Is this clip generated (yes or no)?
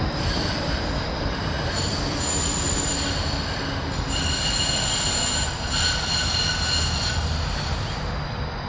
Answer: no